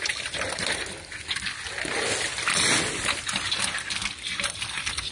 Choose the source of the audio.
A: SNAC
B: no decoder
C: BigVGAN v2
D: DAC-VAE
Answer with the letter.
B